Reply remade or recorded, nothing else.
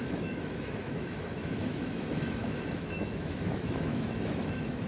remade